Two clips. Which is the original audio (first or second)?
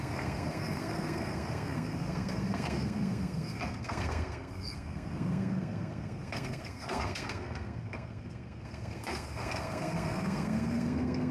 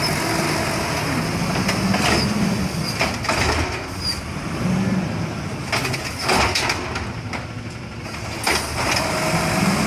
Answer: second